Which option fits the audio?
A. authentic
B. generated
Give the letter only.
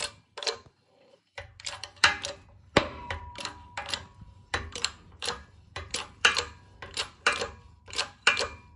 B